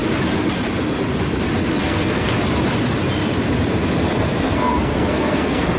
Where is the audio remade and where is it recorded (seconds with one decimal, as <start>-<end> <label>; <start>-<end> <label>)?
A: 0.0-1.8 recorded; 1.8-2.3 remade; 2.3-4.2 recorded; 4.2-5.8 remade

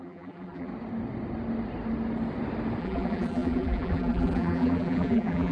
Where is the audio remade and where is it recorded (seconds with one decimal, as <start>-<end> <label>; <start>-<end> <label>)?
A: 0.0-0.7 remade; 0.7-2.8 recorded; 2.8-5.5 remade

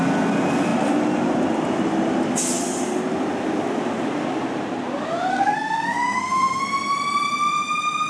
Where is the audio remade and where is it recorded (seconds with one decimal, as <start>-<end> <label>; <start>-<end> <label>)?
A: 0.0-5.3 recorded; 5.3-6.6 remade; 6.6-8.1 recorded

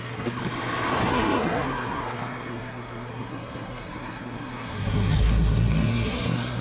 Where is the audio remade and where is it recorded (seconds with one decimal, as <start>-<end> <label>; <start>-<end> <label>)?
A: 0.0-0.4 remade; 0.4-1.1 recorded; 1.1-6.6 remade

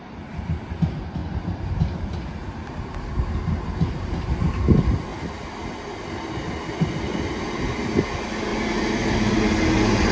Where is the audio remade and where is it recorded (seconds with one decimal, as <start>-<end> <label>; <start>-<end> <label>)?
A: 0.0-1.2 recorded; 1.2-2.8 remade; 2.8-10.1 recorded